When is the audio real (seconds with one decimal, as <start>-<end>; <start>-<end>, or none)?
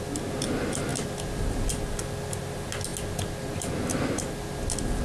0.0-5.0